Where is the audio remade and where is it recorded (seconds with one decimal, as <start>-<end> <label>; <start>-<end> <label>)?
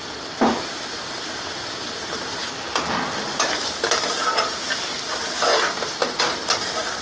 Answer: 0.0-7.0 recorded